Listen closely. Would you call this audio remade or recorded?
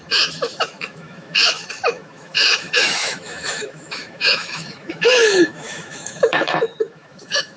remade